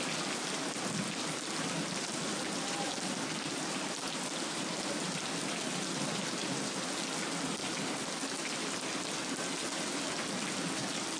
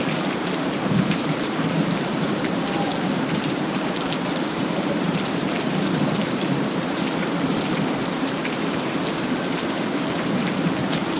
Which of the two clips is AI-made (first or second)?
second